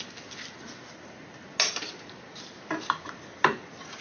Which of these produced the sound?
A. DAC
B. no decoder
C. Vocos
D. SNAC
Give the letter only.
B